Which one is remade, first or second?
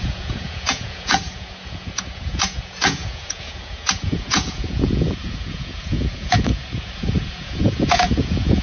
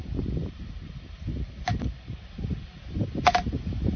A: first